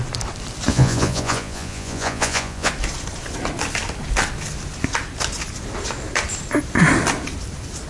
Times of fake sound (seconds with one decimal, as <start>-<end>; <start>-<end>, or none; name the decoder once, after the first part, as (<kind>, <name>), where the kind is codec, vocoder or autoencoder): 0.7-2.7 (vocoder, Vocos)